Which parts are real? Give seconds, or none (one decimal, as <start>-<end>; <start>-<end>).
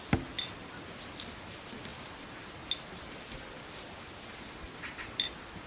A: 0.0-5.7